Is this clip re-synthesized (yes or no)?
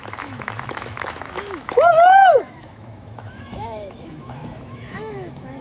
yes